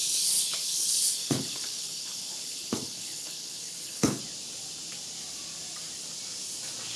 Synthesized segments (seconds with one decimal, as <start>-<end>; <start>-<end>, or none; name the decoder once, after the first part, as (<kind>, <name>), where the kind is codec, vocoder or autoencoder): 0.0-4.2 (codec, HILCodec)